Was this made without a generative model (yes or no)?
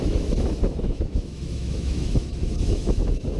no